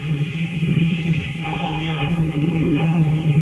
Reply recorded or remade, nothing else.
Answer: remade